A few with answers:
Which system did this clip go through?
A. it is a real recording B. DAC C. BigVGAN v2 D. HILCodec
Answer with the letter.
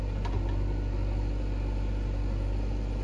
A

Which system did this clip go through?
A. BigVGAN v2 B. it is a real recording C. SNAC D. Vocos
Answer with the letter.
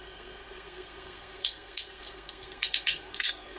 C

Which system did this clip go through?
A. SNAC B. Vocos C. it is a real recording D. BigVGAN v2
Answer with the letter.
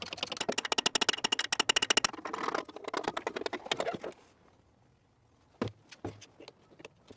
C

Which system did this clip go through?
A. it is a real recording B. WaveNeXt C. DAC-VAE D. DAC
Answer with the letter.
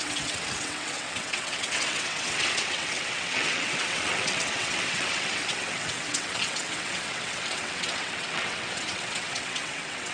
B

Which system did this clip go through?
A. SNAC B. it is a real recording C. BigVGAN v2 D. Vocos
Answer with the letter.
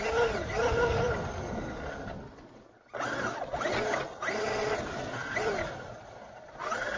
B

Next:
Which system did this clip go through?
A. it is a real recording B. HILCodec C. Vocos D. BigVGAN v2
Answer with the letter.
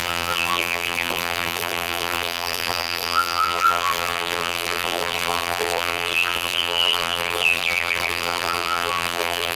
D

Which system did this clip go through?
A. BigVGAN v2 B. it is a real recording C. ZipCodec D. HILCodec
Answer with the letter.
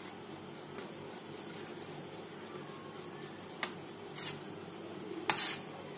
B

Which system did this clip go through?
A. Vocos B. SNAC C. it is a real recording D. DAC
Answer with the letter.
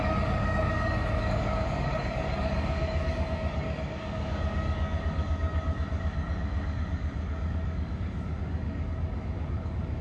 D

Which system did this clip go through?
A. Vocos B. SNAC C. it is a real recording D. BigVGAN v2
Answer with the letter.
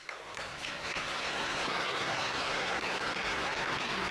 B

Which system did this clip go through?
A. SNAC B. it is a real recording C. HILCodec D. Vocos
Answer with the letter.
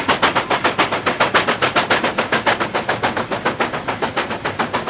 B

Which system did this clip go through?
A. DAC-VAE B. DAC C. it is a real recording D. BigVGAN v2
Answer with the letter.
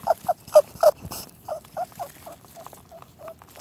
D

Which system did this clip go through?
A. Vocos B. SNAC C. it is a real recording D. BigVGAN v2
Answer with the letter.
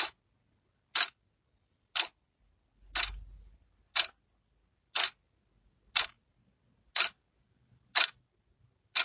C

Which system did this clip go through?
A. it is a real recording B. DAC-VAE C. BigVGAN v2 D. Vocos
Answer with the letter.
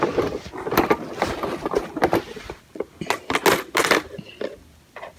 A